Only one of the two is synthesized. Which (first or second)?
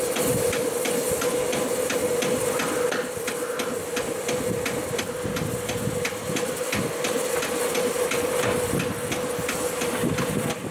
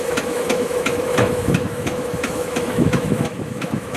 second